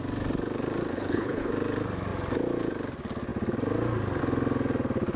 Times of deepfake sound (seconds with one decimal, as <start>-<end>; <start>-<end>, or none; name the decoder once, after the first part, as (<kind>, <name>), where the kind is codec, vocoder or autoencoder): 0.9-1.5 (codec, HILCodec)